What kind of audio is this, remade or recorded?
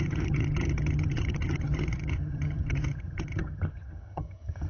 remade